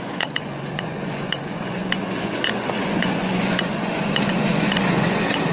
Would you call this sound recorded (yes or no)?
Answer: no